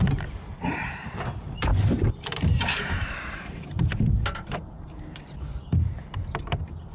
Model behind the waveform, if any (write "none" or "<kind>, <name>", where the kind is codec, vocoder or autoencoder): vocoder, BigVGAN v2